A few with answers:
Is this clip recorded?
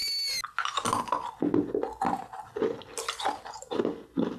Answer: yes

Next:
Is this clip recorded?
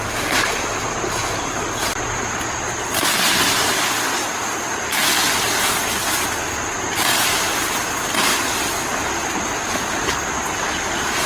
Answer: yes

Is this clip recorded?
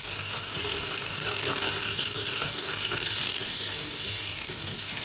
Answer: no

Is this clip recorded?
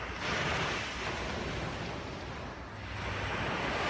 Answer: yes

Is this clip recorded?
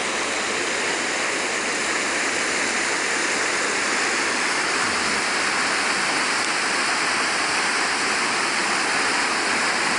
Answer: yes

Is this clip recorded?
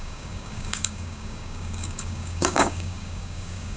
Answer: no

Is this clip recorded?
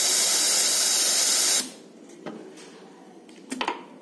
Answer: yes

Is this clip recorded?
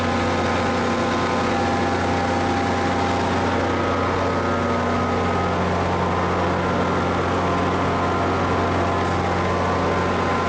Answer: yes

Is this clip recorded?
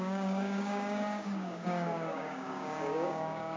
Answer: no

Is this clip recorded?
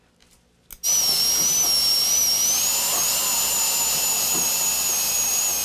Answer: yes